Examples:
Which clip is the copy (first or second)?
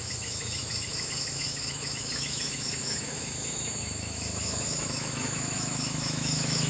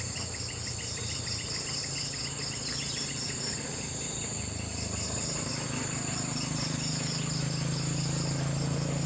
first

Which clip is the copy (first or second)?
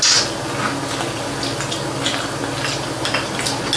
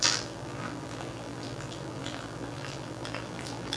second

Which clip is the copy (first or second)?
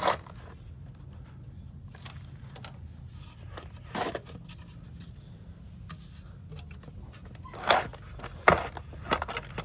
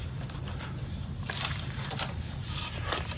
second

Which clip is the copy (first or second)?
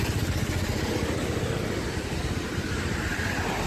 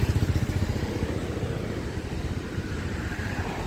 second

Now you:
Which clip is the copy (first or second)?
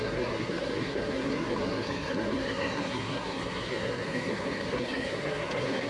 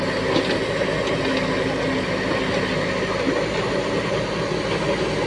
first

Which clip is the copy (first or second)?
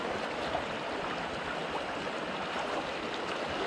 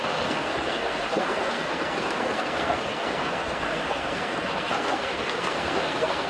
second